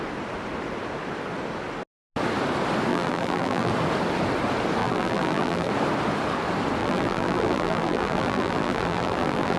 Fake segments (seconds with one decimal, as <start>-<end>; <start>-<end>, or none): 2.9-3.7; 4.8-5.7; 6.8-9.6